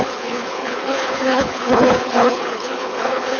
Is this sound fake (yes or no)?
yes